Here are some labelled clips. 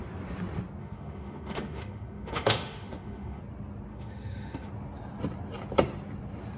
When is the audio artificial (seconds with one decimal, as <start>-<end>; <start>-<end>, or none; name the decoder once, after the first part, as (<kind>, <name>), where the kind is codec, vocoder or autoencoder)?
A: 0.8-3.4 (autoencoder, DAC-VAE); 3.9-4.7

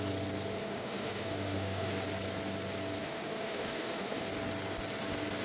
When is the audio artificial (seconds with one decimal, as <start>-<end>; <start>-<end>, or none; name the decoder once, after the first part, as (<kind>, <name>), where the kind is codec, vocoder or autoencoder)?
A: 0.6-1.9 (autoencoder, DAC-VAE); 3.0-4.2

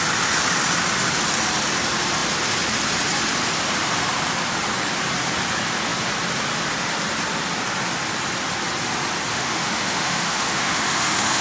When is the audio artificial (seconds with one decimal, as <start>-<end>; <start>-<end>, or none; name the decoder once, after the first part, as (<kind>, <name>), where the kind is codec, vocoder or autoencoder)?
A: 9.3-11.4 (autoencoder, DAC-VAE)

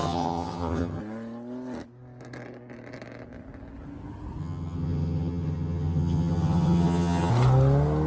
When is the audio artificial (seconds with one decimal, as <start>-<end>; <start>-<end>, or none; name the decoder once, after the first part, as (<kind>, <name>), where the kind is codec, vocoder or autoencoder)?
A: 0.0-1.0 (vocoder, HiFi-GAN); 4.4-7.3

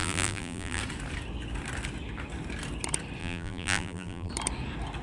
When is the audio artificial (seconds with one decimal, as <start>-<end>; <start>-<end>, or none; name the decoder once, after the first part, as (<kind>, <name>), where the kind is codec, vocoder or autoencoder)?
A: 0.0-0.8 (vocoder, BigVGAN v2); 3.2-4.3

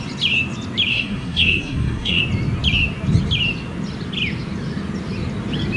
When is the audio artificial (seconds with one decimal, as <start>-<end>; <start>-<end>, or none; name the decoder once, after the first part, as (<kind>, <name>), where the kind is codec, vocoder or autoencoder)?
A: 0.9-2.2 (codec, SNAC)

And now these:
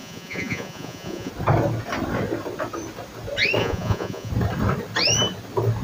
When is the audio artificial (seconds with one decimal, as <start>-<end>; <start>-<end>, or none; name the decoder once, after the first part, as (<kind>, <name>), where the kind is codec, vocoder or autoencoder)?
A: 0.0-1.3 (vocoder, Vocos); 3.6-4.3

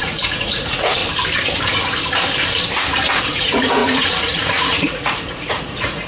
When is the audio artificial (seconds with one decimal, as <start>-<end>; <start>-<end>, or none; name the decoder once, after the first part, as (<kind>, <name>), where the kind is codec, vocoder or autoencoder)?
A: 0.0-1.0 (vocoder, Vocos); 3.2-6.1